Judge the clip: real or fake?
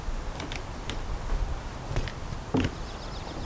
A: real